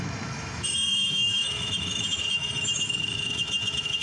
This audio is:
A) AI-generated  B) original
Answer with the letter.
A